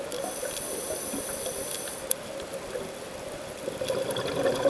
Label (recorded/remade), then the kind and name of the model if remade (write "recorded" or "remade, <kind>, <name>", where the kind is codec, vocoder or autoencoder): recorded